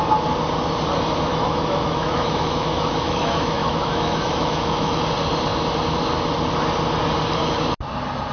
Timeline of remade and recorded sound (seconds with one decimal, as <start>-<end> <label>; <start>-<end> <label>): 0.0-1.3 recorded; 1.3-5.0 remade; 5.0-8.3 recorded